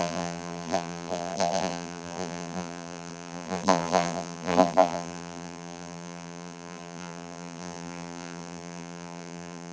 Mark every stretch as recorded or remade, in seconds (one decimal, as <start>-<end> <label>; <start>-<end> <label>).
0.0-9.7 remade